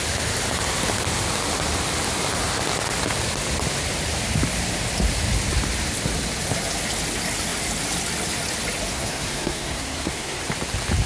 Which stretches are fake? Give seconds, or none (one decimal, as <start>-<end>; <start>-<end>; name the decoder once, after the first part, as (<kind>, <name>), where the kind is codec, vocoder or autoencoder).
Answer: 8.9-10.4 (codec, SNAC)